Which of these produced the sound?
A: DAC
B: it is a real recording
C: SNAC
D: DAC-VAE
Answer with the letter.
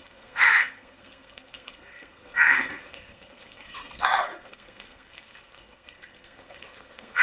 C